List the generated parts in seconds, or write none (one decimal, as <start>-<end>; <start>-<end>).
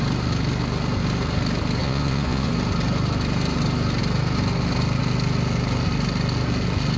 1.8-2.5